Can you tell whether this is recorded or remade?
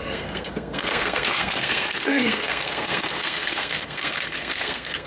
remade